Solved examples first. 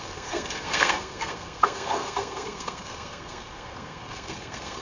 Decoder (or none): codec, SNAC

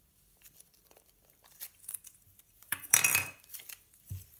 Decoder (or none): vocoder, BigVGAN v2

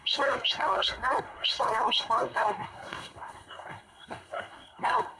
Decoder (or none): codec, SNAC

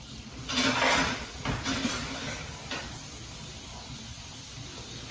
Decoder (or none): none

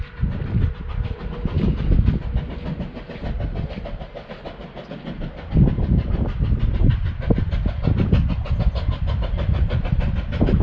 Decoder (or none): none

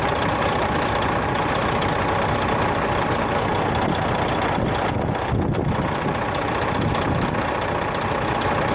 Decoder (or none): none